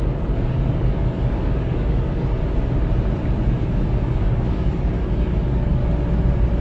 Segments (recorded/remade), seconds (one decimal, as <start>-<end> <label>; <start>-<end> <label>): 0.0-2.4 remade; 2.4-3.5 recorded; 3.5-5.8 remade; 5.8-6.6 recorded